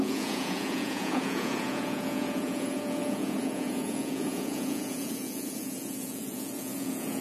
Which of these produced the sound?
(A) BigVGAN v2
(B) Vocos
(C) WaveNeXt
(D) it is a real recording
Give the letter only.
B